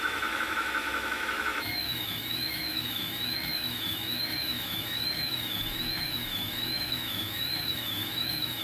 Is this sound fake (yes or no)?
yes